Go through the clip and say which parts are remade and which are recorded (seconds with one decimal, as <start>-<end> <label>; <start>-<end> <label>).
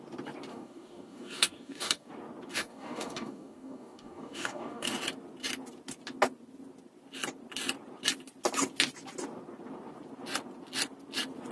0.0-0.5 recorded; 0.5-2.1 remade; 2.1-2.5 recorded; 2.5-4.9 remade; 4.9-11.5 recorded